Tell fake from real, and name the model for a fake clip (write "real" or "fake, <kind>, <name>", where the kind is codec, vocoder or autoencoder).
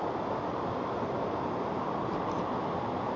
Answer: real